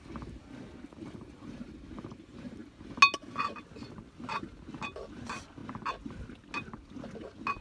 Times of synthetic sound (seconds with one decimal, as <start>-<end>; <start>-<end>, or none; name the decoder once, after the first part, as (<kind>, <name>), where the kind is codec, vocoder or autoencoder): none